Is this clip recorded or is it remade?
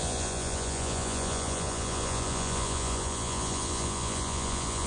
remade